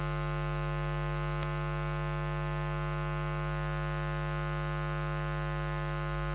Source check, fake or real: real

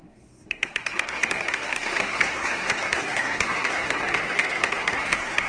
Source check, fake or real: fake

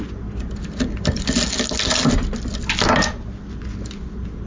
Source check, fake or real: real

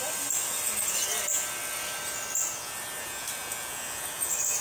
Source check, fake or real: real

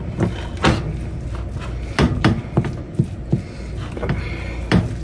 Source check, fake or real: real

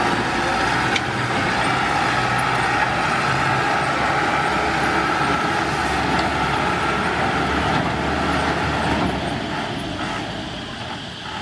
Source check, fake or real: real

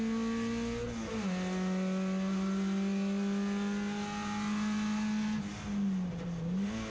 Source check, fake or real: real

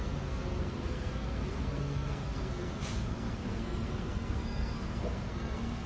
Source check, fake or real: fake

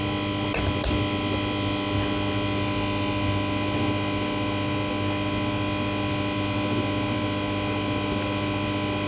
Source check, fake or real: real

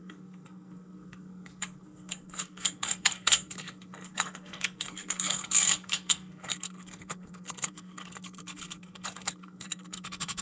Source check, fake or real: fake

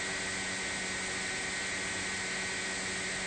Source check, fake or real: real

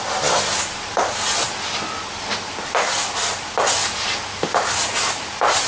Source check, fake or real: real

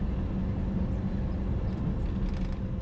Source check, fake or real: real